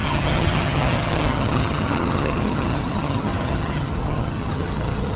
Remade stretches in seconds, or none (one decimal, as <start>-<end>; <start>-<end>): 0.0-5.2